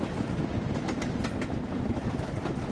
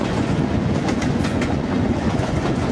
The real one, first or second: first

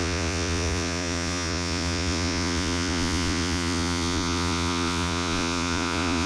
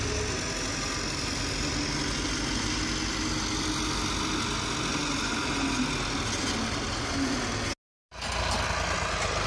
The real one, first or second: second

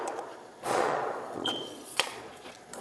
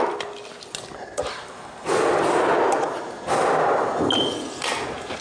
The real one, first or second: second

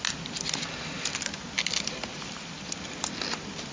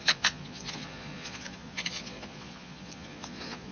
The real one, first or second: first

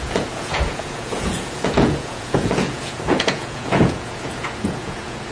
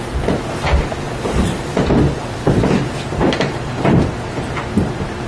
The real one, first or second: second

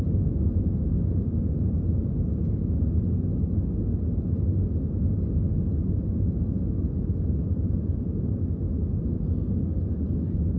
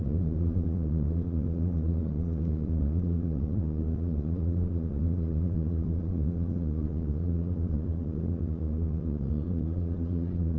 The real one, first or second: first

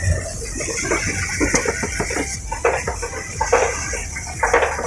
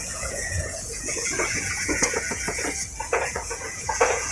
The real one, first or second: first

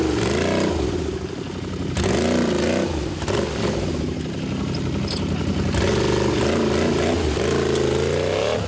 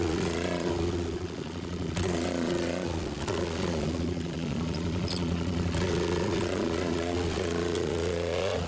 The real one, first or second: first